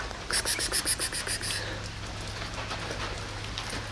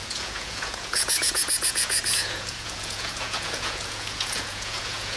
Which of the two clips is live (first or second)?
first